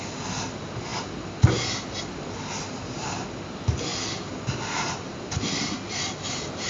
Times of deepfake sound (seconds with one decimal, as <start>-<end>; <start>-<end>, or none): none

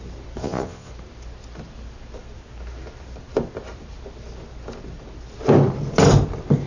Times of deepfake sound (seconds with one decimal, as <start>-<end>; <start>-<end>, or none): 0.4-0.9

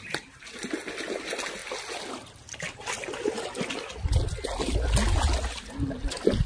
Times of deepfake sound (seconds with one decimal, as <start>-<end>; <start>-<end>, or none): none

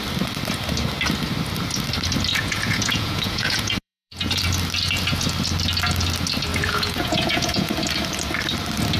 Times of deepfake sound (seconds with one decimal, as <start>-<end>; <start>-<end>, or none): 2.3-4.4; 6.5-7.7

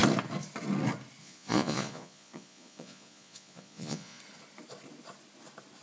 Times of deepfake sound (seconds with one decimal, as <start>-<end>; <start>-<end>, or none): 1.2-4.2

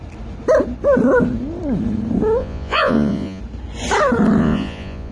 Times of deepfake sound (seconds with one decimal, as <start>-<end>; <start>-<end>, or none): 2.4-3.4; 4.4-5.1

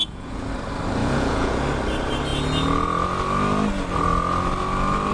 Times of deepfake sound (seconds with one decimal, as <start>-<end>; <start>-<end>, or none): 0.0-0.5; 1.0-1.6